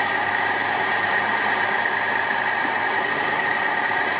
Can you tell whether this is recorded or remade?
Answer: remade